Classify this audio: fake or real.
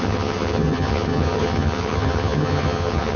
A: fake